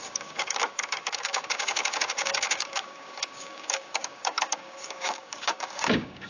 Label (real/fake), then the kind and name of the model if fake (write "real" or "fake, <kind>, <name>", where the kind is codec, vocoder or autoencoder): fake, codec, DAC